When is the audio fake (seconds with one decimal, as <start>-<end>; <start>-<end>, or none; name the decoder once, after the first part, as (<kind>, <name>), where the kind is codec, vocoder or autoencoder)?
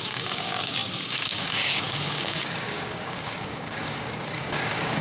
0.0-5.0 (codec, DAC)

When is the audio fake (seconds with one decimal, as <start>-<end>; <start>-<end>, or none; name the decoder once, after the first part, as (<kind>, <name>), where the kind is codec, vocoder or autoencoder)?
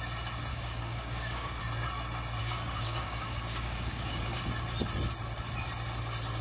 0.5-1.6 (codec, DAC); 2.4-4.4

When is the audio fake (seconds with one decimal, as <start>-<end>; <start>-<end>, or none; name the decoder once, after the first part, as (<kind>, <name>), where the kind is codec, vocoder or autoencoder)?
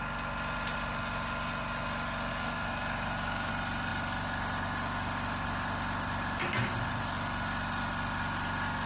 2.3-3.5 (codec, DAC)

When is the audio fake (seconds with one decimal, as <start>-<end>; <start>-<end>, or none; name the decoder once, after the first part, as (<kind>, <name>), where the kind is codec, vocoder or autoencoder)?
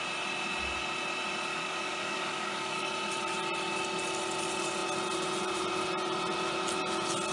1.5-2.9 (codec, DAC)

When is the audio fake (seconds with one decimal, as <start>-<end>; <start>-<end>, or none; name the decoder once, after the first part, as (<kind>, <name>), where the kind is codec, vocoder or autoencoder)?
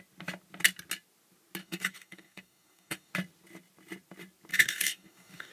1.6-3.1 (codec, DAC); 4.5-5.5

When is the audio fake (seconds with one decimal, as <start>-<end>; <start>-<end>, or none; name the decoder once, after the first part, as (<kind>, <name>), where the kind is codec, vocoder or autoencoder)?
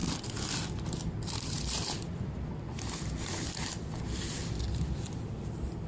none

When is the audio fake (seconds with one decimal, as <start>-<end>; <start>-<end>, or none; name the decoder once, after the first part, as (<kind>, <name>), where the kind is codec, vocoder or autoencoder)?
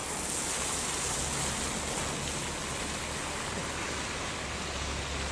none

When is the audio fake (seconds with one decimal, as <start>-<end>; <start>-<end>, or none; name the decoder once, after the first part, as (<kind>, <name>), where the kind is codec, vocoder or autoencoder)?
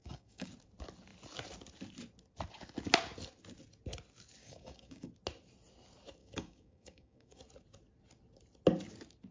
0.0-0.5 (codec, DAC); 4.4-5.1; 6.2-7.4